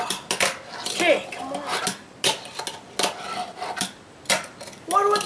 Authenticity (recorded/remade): recorded